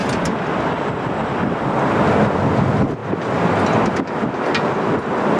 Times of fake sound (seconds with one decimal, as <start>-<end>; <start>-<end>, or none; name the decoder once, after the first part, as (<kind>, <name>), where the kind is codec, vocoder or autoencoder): 0.0-1.7 (vocoder, BigVGAN v2)